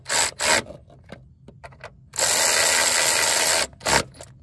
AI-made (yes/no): no